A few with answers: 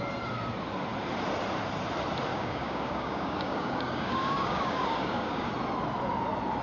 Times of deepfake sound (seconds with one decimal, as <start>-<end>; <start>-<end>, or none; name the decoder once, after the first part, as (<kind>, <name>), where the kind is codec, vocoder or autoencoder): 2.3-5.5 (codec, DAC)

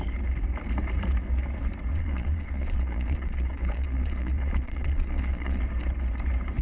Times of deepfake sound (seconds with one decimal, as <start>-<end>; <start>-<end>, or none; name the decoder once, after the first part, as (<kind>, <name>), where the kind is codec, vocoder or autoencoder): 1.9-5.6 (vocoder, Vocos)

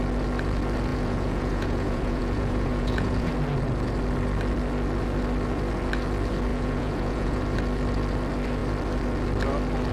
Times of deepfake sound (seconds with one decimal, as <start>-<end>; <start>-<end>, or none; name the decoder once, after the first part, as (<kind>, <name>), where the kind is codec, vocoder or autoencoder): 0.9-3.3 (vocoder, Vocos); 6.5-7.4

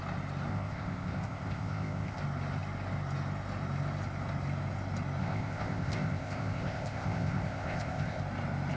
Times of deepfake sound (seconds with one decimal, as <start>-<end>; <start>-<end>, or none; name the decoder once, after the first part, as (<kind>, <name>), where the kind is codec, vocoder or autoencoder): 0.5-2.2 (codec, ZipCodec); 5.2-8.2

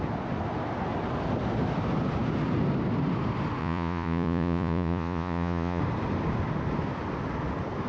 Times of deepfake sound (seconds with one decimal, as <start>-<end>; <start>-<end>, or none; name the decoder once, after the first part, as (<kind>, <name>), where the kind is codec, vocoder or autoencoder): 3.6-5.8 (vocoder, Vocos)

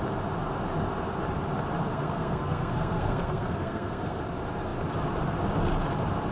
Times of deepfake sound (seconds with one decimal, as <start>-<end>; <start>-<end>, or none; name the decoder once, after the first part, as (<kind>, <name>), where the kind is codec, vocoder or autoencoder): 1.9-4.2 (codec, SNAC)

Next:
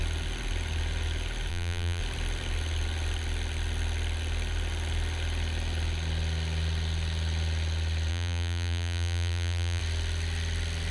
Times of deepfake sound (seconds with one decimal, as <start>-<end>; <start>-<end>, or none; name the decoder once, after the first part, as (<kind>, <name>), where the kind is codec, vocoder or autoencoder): 1.5-2.0 (vocoder, BigVGAN v2); 8.1-9.8

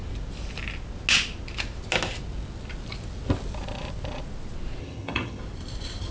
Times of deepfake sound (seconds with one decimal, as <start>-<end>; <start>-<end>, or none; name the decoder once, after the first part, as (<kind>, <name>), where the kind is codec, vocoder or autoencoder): 4.8-5.4 (vocoder, HiFi-GAN)